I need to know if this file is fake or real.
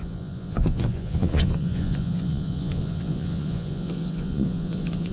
fake